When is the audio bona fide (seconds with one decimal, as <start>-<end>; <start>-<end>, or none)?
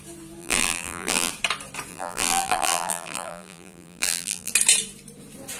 0.0-0.4; 1.3-1.9; 4.5-5.6